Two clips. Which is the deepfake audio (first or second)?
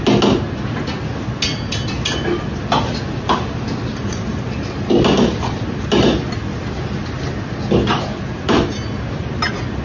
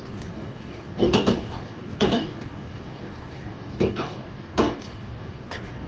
second